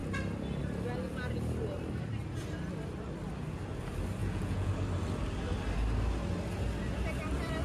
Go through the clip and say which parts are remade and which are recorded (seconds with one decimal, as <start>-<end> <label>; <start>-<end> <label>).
0.0-4.2 recorded; 4.2-4.7 remade; 4.7-7.6 recorded

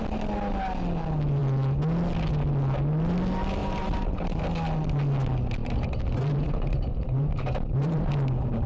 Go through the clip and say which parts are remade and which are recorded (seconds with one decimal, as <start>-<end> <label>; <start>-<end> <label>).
0.0-3.6 recorded; 3.6-4.4 remade; 4.4-5.6 recorded; 5.6-8.1 remade; 8.1-8.7 recorded

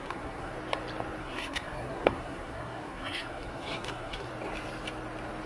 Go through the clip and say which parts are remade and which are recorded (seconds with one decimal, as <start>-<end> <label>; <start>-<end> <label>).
0.0-0.5 remade; 0.5-1.2 recorded; 1.2-4.3 remade; 4.3-5.5 recorded

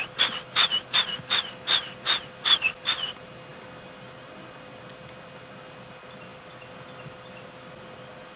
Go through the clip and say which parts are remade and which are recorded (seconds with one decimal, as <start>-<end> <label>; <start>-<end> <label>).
0.0-8.4 recorded

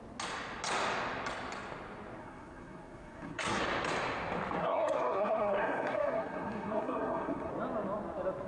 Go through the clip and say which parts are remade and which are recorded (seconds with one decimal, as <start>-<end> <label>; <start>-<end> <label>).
0.0-2.2 recorded; 2.2-3.6 remade; 3.6-4.6 recorded; 4.6-7.5 remade; 7.5-8.5 recorded

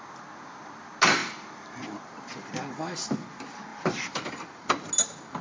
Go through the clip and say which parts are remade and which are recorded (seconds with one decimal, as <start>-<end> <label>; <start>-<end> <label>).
0.0-1.2 recorded; 1.2-2.7 remade; 2.7-3.7 recorded; 3.7-4.9 remade; 4.9-5.4 recorded